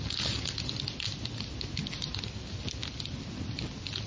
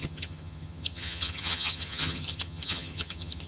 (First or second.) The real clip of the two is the first